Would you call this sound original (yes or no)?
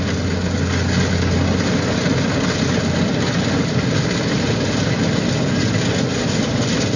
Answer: yes